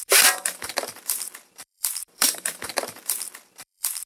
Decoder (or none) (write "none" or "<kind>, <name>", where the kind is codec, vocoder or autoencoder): vocoder, BigVGAN v2